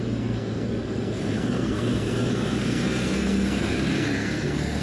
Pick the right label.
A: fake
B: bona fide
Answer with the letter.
A